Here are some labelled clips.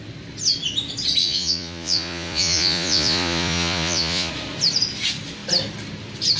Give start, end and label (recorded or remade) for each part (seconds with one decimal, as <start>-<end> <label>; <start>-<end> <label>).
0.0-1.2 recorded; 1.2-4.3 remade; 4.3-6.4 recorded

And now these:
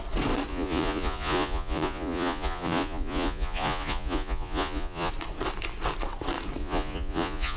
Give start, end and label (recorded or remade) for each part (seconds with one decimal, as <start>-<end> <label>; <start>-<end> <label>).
0.0-0.5 recorded; 0.5-5.1 remade; 5.1-6.6 recorded; 6.6-7.6 remade

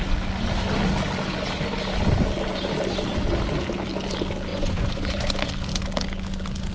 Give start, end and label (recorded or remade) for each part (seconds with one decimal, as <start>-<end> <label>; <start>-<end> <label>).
0.0-4.5 recorded; 4.5-5.5 remade; 5.5-6.7 recorded

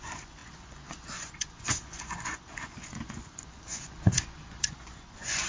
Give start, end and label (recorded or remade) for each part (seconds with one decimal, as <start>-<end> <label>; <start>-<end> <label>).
0.0-5.5 remade